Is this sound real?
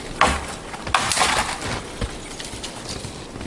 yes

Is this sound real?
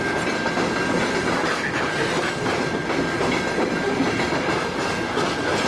yes